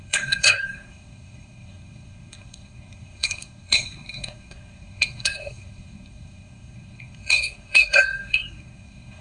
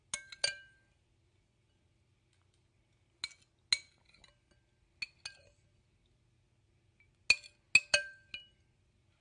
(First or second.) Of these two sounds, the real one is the second